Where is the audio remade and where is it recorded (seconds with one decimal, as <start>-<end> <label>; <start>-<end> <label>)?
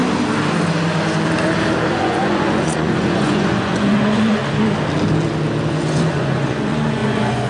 0.0-1.9 recorded; 1.9-4.4 remade; 4.4-5.7 recorded; 5.7-7.5 remade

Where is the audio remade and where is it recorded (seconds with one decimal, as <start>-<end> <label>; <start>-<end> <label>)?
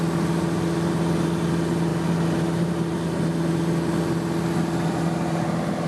0.0-5.9 recorded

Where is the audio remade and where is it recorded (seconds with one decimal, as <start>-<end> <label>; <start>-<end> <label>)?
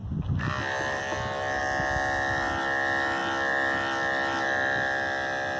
0.0-5.6 recorded